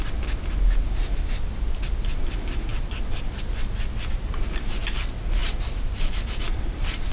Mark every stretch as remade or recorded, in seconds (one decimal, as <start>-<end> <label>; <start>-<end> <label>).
0.0-5.4 recorded; 5.4-7.1 remade